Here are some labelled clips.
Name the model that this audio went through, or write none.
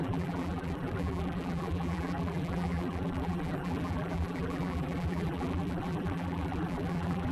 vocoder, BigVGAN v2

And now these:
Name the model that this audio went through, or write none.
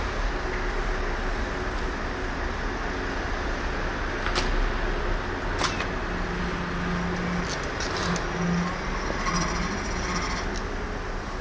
none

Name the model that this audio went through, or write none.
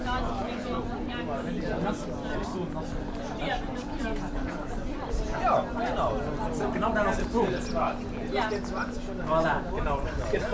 none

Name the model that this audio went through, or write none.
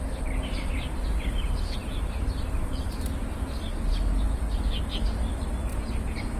none